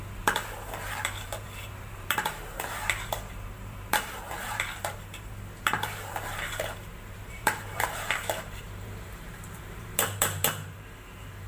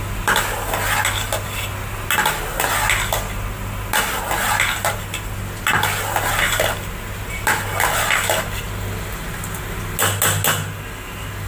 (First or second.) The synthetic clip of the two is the first